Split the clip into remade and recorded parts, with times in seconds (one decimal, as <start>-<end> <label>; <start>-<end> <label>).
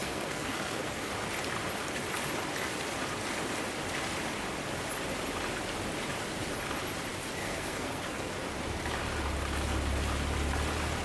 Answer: 0.0-1.1 remade; 1.1-7.4 recorded; 7.4-8.3 remade; 8.3-11.0 recorded